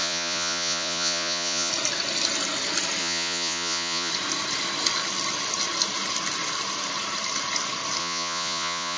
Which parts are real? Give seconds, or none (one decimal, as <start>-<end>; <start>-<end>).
1.7-3.0; 4.1-8.0